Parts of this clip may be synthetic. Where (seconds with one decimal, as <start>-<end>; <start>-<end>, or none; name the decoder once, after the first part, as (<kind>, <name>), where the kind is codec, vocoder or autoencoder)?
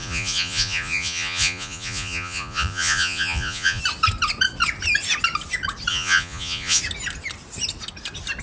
0.0-3.8 (vocoder, Vocos); 5.9-6.8